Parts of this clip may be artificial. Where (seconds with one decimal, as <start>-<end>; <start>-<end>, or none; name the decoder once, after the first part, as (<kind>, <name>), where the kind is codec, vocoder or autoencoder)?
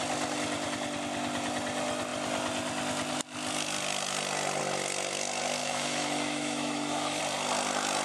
5.6-7.2 (autoencoder, DAC-VAE)